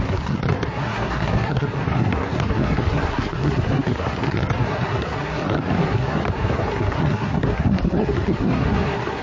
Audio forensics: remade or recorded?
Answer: remade